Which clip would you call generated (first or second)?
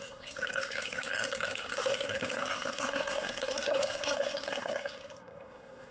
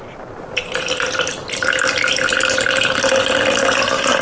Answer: first